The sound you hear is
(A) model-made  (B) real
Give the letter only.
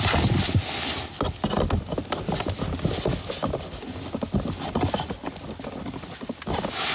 B